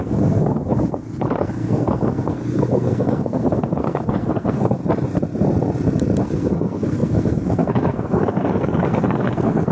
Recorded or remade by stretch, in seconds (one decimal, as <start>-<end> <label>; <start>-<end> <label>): 0.0-4.8 remade; 4.8-6.2 recorded; 6.2-9.7 remade